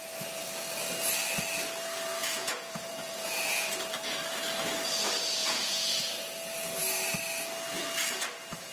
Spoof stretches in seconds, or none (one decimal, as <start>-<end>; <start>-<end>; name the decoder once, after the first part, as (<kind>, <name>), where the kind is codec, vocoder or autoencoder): 2.2-3.7 (vocoder, Vocos); 5.4-6.1